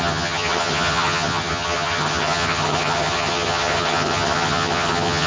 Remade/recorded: remade